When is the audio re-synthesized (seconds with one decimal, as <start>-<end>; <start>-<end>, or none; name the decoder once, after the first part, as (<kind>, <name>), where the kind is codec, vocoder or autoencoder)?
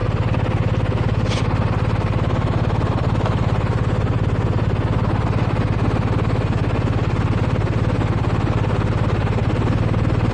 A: none